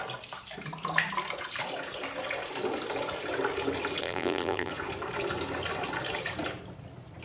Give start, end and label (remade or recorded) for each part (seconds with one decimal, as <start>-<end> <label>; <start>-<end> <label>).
0.0-4.0 recorded; 4.0-4.7 remade; 4.7-7.2 recorded